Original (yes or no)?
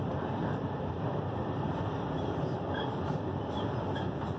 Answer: no